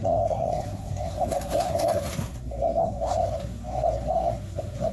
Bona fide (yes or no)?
no